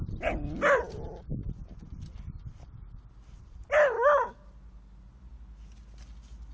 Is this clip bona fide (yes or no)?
yes